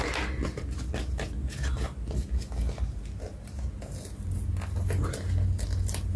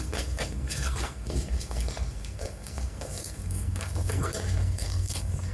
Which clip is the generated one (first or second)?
second